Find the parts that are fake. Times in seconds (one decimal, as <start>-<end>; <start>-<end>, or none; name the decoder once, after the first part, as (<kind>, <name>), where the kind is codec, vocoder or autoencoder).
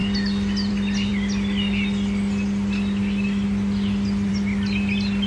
none